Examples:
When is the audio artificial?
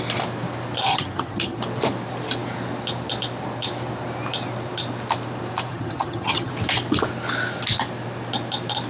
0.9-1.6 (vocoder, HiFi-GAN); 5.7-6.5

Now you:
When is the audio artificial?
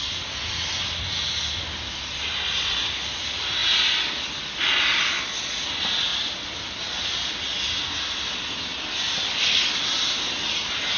none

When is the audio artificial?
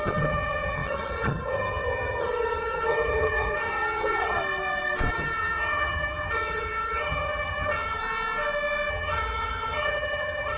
0.0-4.4 (vocoder, HiFi-GAN); 5.1-8.0; 8.9-10.6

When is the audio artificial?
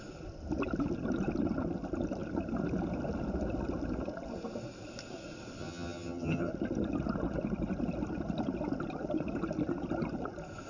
5.6-6.5 (vocoder, HiFi-GAN)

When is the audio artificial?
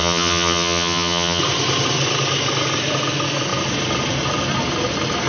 0.0-1.4 (vocoder, HiFi-GAN)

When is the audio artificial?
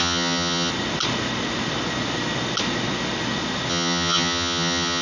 0.0-0.7 (vocoder, HiFi-GAN); 3.7-5.0